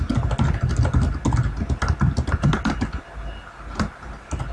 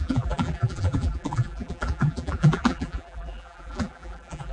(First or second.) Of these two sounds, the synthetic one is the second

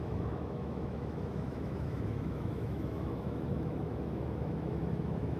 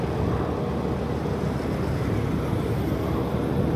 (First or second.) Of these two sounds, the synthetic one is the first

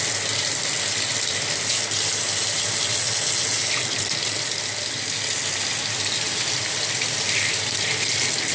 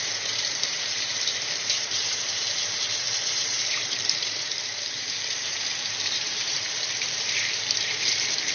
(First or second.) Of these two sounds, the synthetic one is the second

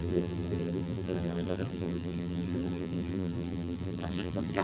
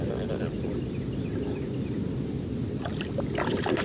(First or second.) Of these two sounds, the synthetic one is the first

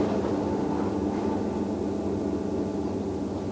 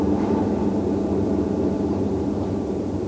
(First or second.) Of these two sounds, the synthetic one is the second